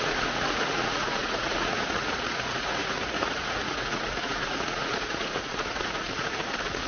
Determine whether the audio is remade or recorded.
remade